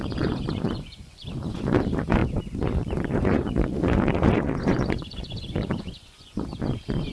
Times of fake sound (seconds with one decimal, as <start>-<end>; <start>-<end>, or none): 0.0-7.1